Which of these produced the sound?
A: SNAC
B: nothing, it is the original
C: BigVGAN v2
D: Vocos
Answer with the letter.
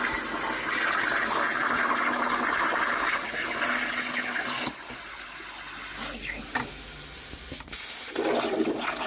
B